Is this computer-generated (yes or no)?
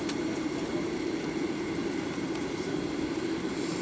yes